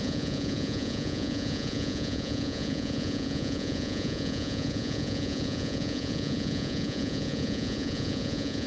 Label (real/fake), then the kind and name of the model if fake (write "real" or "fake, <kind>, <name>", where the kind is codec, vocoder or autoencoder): fake, vocoder, Vocos